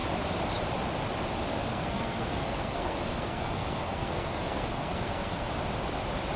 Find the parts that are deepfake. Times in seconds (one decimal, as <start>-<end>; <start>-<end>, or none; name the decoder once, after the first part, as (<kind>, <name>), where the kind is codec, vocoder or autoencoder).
1.7-5.5 (codec, SNAC)